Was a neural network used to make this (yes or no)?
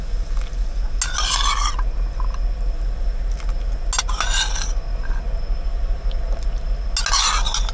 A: no